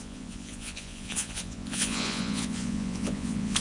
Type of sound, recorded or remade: remade